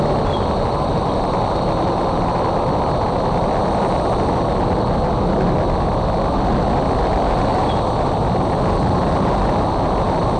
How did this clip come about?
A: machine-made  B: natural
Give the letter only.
B